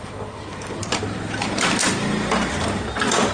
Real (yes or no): no